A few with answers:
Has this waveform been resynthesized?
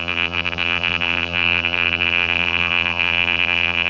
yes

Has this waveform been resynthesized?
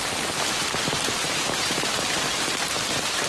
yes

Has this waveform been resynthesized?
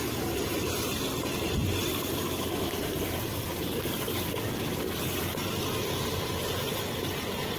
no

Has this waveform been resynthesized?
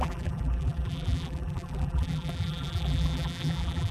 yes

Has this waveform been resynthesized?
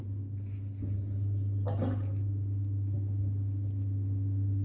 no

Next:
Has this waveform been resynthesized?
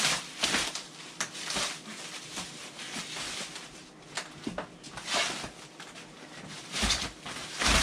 no